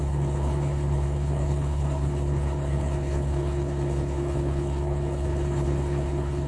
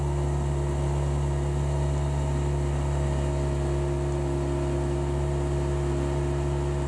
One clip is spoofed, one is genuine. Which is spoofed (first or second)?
first